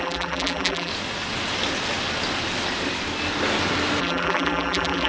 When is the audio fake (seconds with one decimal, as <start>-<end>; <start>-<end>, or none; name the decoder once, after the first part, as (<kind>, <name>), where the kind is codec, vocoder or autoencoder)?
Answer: 0.0-0.9 (vocoder, BigVGAN v2); 4.0-5.1